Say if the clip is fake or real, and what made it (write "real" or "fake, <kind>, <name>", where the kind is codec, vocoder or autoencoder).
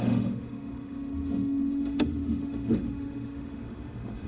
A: fake, autoencoder, DAC-VAE